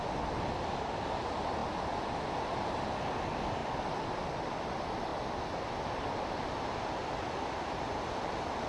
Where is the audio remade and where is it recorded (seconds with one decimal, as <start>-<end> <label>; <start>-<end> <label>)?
0.0-8.7 recorded